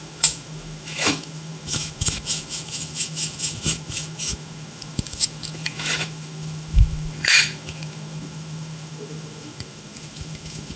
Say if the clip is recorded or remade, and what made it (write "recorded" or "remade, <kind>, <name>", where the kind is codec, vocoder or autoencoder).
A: remade, autoencoder, DAC-VAE